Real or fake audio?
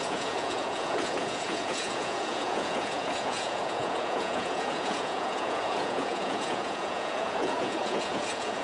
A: fake